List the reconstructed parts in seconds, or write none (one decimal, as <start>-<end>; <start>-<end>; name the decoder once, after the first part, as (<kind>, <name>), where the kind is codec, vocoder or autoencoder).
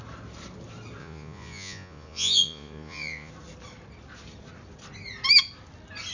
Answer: 1.0-3.3 (vocoder, Vocos)